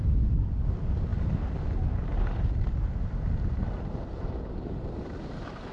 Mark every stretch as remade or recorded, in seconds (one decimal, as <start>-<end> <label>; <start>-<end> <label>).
0.0-5.7 recorded